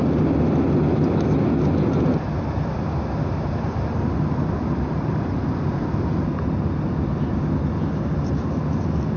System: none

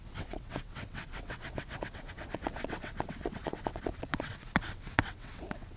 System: vocoder, WaveNeXt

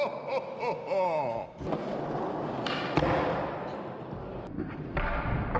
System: none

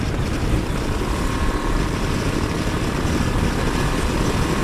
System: none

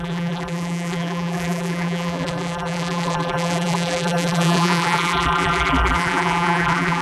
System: vocoder, BigVGAN v2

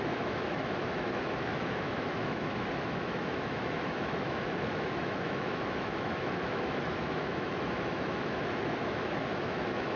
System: autoencoder, DAC-VAE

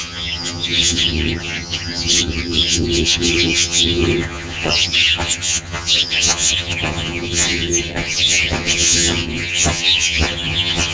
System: vocoder, HiFi-GAN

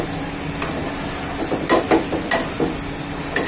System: none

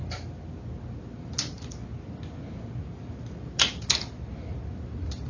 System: none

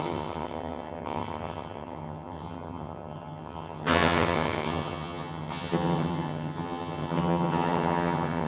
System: vocoder, HiFi-GAN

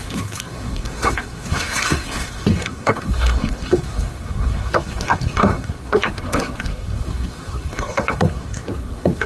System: codec, SNAC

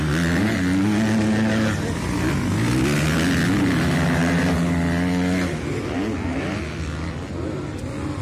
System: none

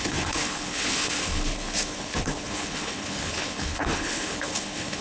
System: codec, HILCodec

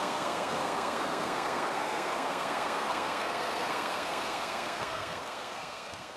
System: codec, SNAC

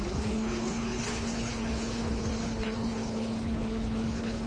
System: codec, HILCodec